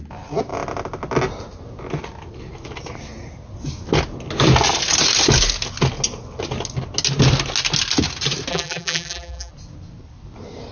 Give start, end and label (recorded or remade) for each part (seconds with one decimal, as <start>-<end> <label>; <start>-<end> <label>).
0.0-8.5 recorded; 8.5-9.5 remade; 9.5-10.7 recorded